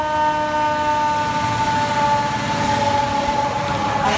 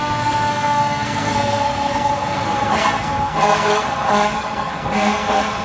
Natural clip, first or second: first